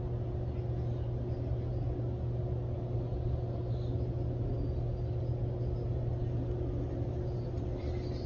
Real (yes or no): yes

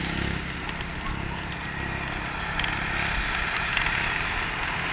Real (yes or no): yes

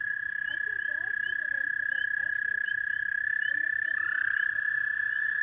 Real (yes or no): no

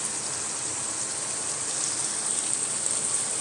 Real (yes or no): yes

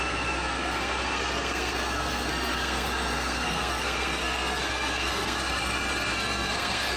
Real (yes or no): no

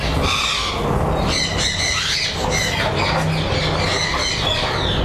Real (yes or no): yes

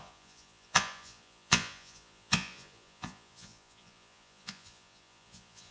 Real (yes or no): no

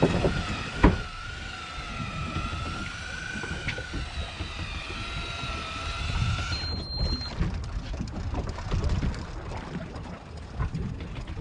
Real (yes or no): yes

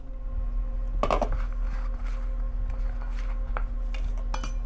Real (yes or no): yes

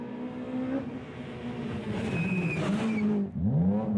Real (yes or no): yes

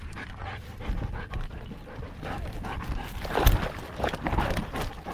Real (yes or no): yes